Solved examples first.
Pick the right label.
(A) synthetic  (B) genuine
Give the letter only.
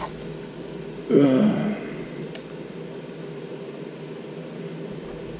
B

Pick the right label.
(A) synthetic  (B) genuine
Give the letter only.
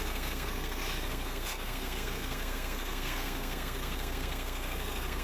A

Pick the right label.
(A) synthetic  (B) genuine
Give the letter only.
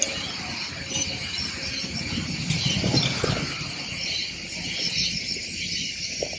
B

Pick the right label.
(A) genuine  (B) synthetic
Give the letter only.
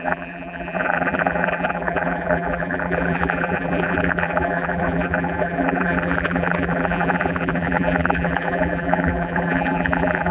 B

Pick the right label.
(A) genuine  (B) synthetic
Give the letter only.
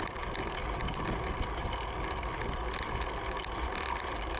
A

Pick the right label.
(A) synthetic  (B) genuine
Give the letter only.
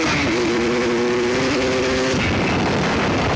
B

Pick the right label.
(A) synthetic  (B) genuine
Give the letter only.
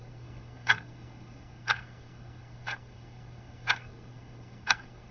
A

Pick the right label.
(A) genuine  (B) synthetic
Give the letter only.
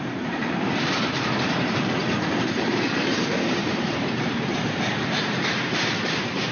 B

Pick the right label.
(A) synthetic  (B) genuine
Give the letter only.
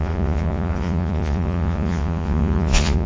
A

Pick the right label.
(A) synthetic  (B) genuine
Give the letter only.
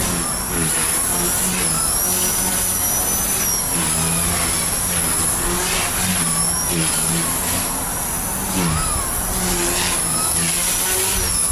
B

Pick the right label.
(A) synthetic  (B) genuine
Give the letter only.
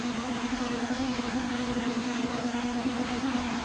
A